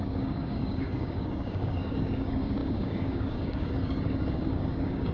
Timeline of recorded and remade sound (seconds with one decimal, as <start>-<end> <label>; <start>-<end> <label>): 0.0-5.1 remade